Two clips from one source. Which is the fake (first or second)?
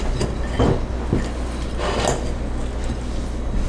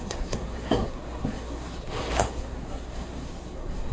second